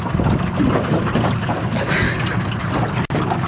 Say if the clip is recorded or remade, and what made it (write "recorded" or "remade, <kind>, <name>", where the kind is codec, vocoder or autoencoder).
recorded